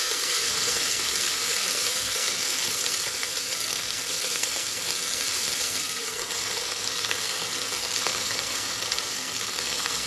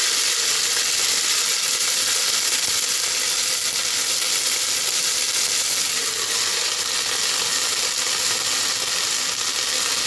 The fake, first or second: first